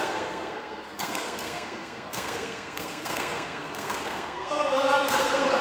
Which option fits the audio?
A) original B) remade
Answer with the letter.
B